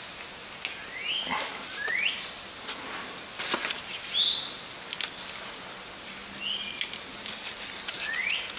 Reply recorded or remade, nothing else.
recorded